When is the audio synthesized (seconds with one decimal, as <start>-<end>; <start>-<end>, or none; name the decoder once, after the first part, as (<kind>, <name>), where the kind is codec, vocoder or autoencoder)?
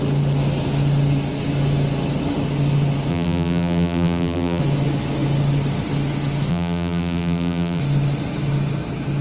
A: 3.1-4.6 (vocoder, BigVGAN v2); 6.5-7.8